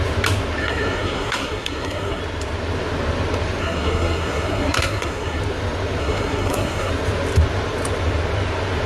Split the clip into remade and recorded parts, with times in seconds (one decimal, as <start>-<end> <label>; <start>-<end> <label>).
0.0-0.6 recorded; 0.6-2.2 remade; 2.2-3.6 recorded; 3.6-5.4 remade; 5.4-6.0 recorded; 6.0-6.9 remade; 6.9-8.9 recorded